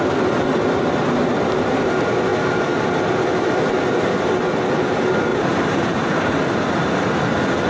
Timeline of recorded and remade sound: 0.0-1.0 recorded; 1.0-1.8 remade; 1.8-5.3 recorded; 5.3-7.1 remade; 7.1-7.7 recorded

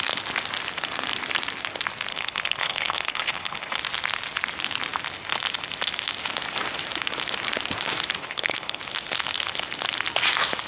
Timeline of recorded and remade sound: 0.0-2.1 recorded; 2.1-3.8 remade; 3.8-8.2 recorded; 8.2-8.8 remade; 8.8-10.7 recorded

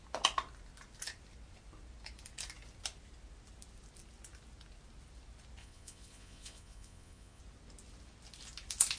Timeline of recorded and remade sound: 0.0-5.6 recorded; 5.6-7.4 remade; 7.4-9.0 recorded

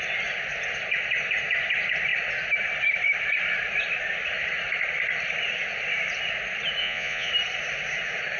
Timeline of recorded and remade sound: 0.0-6.8 recorded; 6.8-7.3 remade; 7.3-8.4 recorded

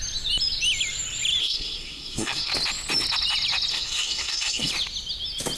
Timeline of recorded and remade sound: 0.0-1.4 recorded; 1.4-2.5 remade; 2.5-3.7 recorded; 3.7-4.7 remade; 4.7-5.6 recorded

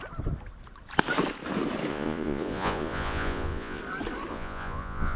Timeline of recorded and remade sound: 0.0-1.9 recorded; 1.9-3.8 remade; 3.8-4.3 recorded; 4.3-5.2 remade

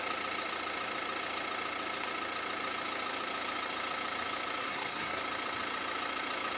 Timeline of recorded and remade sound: 0.0-4.6 recorded; 4.6-5.2 remade; 5.2-6.6 recorded